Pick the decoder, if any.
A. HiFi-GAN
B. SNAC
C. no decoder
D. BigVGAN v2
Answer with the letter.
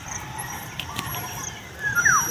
D